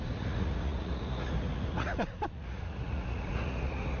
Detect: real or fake fake